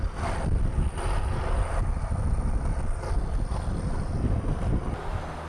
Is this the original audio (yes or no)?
yes